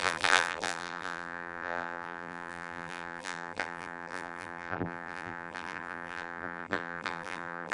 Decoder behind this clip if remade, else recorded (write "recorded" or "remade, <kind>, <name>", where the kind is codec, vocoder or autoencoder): remade, vocoder, BigVGAN v2